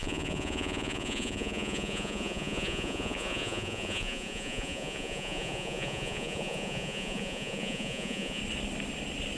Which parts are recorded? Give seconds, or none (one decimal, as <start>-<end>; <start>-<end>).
8.4-9.4